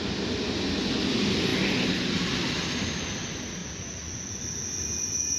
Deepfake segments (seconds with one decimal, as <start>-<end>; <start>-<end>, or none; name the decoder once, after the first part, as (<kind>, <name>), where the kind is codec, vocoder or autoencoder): 3.6-4.4 (vocoder, Vocos)